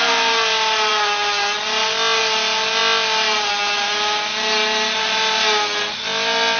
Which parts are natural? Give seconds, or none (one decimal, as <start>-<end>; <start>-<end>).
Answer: 0.0-6.6